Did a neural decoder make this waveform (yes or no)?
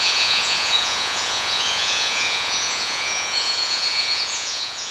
yes